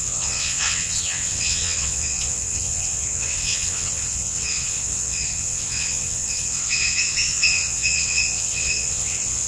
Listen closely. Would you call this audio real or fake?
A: fake